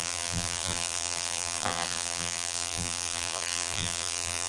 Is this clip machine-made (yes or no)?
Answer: yes